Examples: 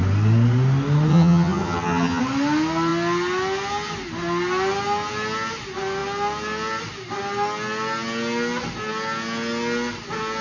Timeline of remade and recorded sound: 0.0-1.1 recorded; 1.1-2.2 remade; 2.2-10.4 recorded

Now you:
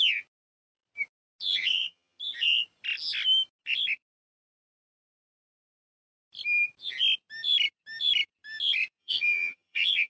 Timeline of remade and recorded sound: 0.0-1.5 recorded; 1.5-2.2 remade; 2.2-9.0 recorded; 9.0-10.1 remade

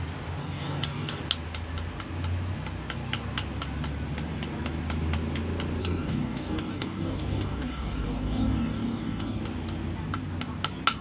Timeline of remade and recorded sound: 0.0-0.4 recorded; 0.4-1.2 remade; 1.2-5.8 recorded; 5.8-9.4 remade; 9.4-11.0 recorded

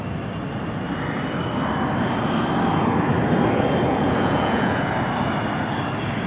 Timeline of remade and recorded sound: 0.0-3.9 recorded; 3.9-4.9 remade; 4.9-6.3 recorded

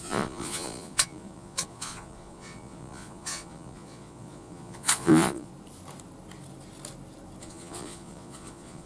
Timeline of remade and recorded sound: 0.0-5.5 remade; 5.5-7.4 recorded; 7.4-8.9 remade

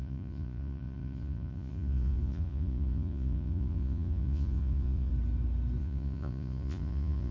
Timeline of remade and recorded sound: 0.0-5.1 remade; 5.1-5.8 recorded; 5.8-7.3 remade

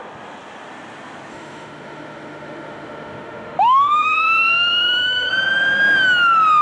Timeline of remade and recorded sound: 0.0-1.3 recorded; 1.3-5.3 remade; 5.3-6.6 recorded

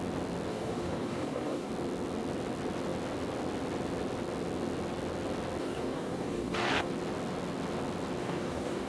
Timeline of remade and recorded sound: 0.0-0.5 recorded; 0.5-1.7 remade; 1.7-5.6 recorded; 5.6-6.9 remade; 6.9-8.2 recorded; 8.2-8.9 remade